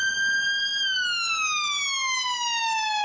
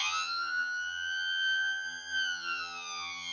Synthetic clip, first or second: second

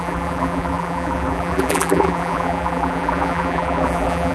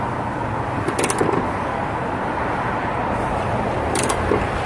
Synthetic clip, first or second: first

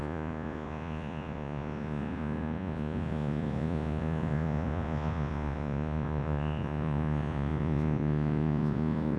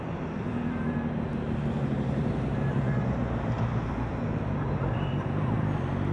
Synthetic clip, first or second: first